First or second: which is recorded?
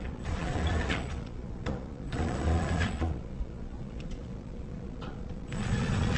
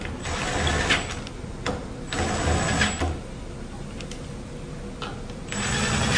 second